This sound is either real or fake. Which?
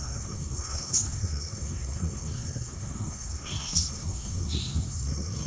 fake